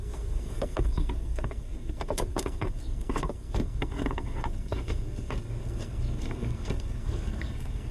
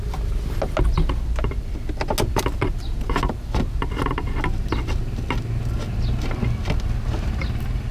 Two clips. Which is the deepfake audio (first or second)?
first